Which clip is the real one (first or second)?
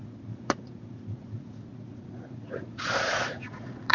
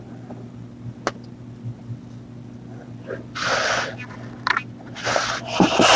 second